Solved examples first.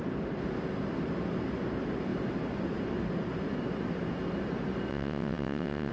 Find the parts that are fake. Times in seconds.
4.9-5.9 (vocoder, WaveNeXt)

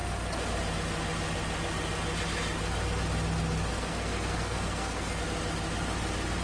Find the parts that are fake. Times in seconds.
3.7-5.2 (codec, SNAC)